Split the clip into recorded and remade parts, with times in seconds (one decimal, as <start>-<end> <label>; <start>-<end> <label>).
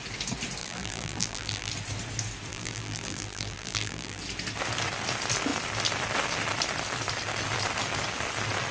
0.0-0.6 recorded; 0.6-1.7 remade; 1.7-2.5 recorded; 2.5-4.2 remade; 4.2-8.7 recorded